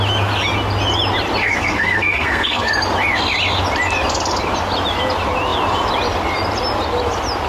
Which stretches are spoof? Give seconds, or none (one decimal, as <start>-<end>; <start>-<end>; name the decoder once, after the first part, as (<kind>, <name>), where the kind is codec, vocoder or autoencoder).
1.4-2.7 (codec, SNAC)